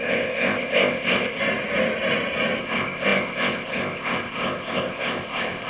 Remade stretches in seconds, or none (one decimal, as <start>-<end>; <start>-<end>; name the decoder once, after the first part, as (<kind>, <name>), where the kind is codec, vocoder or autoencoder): 0.0-1.4 (codec, ZipCodec); 2.6-5.7